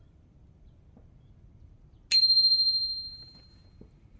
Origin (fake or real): real